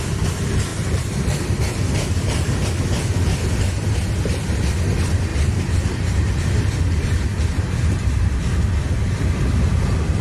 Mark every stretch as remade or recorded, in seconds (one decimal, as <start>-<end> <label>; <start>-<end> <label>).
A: 0.0-0.7 recorded; 0.7-2.7 remade; 2.7-5.3 recorded; 5.3-6.4 remade; 6.4-7.3 recorded; 7.3-8.4 remade; 8.4-10.2 recorded